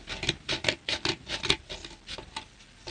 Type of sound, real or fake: real